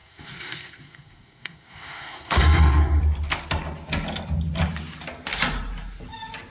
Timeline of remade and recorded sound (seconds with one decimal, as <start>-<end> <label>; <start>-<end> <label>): 0.0-3.0 remade; 3.0-6.5 recorded